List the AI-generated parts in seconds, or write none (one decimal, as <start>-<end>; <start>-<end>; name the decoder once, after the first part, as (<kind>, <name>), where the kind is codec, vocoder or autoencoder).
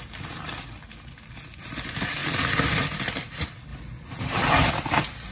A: none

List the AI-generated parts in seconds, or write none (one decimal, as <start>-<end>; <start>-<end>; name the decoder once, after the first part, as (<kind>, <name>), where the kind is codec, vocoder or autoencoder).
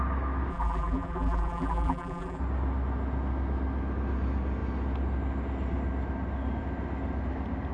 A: 0.5-2.4 (vocoder, BigVGAN v2)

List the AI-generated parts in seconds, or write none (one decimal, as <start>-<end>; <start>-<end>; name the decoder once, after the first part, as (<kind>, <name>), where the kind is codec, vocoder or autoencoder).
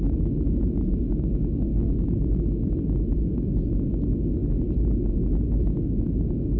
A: 0.0-4.4 (autoencoder, DAC-VAE); 5.1-6.6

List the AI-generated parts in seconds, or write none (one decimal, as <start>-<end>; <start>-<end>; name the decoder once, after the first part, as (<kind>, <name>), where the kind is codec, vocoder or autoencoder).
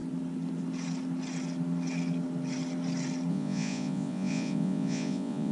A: 3.3-5.5 (vocoder, Vocos)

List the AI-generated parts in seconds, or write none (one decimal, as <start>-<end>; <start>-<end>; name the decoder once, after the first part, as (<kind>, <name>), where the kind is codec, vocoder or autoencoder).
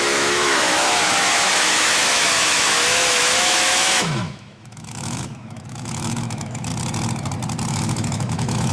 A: 0.0-6.7 (autoencoder, DAC-VAE); 7.7-8.7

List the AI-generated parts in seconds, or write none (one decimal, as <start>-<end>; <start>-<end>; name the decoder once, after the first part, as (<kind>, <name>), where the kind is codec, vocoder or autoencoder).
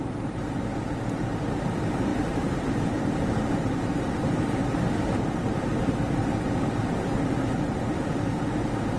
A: 0.0-6.2 (vocoder, BigVGAN v2)